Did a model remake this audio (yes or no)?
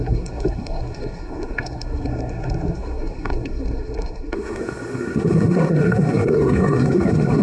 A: yes